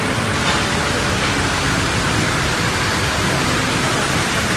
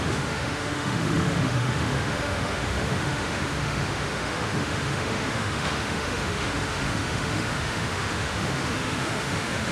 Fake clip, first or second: second